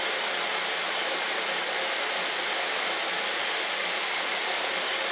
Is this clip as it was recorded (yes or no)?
yes